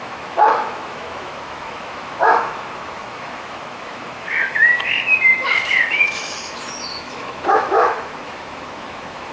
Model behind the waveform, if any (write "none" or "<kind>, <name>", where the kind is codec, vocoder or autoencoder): autoencoder, DAC-VAE